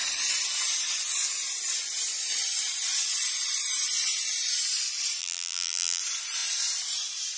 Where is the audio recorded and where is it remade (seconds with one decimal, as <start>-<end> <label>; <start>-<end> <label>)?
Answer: 0.0-5.2 recorded; 5.2-6.0 remade; 6.0-7.4 recorded